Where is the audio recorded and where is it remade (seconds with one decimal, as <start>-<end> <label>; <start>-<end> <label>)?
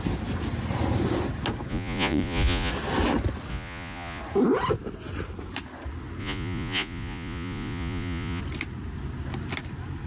0.0-1.7 recorded; 1.7-2.7 remade; 2.7-3.5 recorded; 3.5-4.2 remade; 4.2-6.2 recorded; 6.2-8.4 remade; 8.4-10.1 recorded